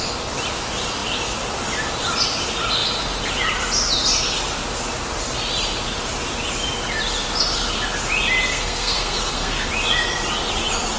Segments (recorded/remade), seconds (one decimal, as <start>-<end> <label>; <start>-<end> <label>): 0.0-8.5 recorded; 8.5-9.7 remade; 9.7-11.0 recorded